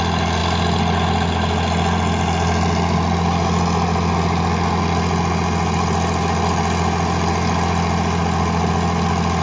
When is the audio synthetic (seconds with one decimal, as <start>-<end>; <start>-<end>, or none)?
none

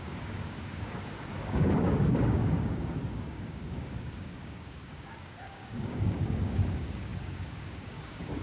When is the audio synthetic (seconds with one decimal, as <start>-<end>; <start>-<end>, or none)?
0.0-8.4